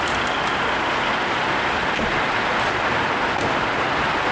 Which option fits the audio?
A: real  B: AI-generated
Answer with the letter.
A